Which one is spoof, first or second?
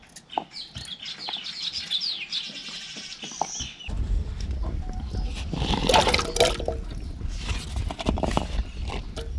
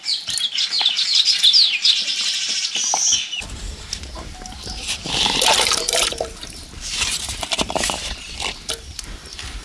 second